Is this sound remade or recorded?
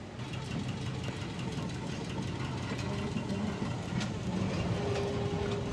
recorded